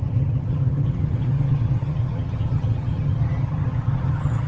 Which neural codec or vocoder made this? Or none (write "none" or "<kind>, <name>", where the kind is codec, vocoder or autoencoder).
vocoder, HiFi-GAN